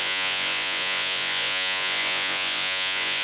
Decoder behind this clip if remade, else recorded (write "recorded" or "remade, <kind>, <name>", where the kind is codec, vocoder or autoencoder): remade, vocoder, Vocos